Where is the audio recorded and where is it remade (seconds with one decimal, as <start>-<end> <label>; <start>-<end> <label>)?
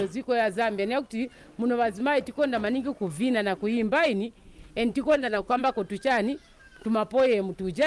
0.0-5.1 recorded; 5.1-5.6 remade; 5.6-7.9 recorded